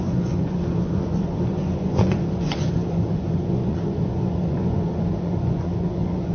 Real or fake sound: fake